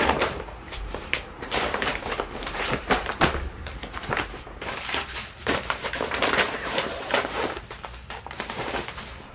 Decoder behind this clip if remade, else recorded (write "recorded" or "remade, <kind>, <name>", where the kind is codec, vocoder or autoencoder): remade, vocoder, BigVGAN v2